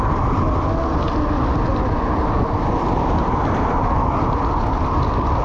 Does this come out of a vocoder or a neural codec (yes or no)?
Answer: no